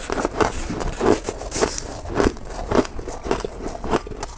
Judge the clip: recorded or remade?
recorded